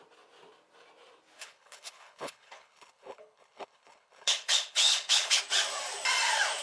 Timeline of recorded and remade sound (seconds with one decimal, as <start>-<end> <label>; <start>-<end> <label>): 0.0-1.4 recorded; 1.4-5.4 remade; 5.4-6.6 recorded